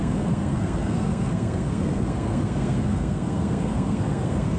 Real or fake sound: fake